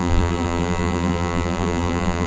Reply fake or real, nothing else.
fake